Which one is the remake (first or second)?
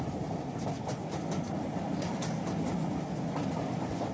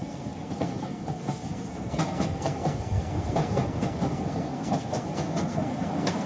second